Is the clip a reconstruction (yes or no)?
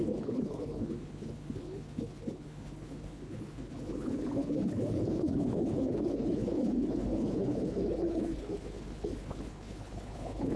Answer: yes